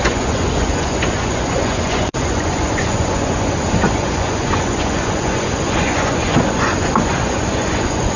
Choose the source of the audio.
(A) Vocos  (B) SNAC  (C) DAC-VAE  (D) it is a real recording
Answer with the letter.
A